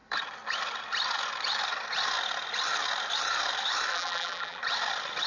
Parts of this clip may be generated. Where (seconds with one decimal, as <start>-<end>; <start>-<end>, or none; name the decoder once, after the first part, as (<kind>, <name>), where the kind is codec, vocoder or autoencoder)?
3.9-4.6 (vocoder, BigVGAN v2)